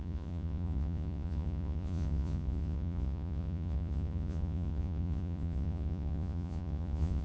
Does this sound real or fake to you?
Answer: fake